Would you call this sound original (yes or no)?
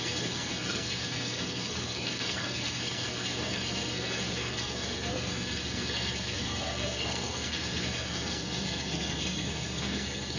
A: no